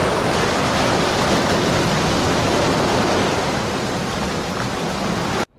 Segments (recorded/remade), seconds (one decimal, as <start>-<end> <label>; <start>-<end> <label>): 0.0-1.3 remade; 1.3-2.4 recorded; 2.4-3.1 remade; 3.1-5.6 recorded

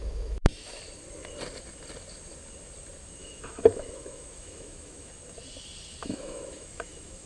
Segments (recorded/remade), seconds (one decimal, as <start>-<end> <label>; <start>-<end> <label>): 0.0-0.8 remade; 0.8-3.2 recorded; 3.2-5.1 remade; 5.1-6.0 recorded; 6.0-7.3 remade